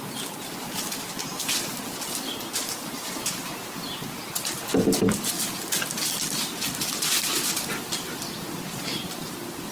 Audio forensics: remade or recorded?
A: recorded